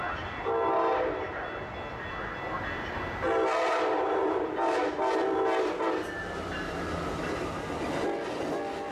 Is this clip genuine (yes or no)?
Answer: yes